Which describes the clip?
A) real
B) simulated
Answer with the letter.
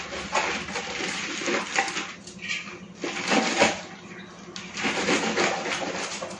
A